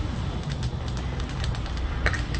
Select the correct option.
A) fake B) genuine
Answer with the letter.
A